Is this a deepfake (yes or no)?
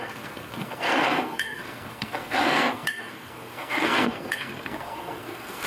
yes